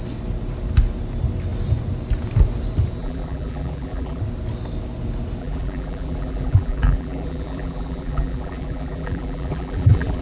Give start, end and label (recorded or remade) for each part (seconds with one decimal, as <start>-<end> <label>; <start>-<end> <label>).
0.0-3.0 recorded; 3.0-4.2 remade; 4.2-5.4 recorded; 5.4-10.2 remade